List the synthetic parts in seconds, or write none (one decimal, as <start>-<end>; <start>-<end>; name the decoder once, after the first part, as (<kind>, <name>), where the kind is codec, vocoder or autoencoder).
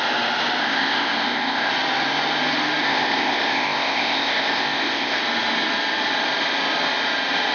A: 0.6-1.7 (codec, ZipCodec); 2.8-5.2